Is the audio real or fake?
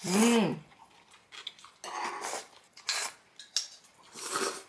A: real